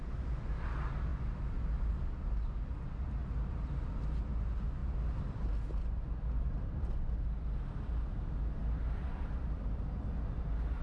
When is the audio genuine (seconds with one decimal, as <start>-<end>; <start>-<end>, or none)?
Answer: 0.0-1.1; 1.9-10.8